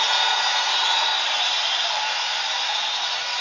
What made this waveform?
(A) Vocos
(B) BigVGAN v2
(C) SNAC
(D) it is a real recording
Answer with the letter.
B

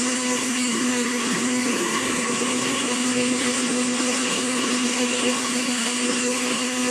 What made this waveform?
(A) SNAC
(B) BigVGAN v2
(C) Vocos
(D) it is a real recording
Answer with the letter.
A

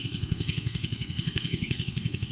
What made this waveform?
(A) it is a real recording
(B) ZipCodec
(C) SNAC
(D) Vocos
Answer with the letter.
C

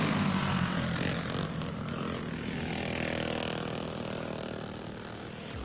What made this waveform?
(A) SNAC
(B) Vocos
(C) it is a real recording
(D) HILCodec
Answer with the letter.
C